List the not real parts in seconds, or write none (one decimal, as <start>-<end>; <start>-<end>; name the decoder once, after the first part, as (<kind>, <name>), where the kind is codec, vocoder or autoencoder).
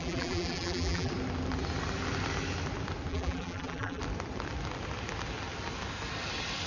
0.0-1.1 (vocoder, BigVGAN v2); 3.1-4.0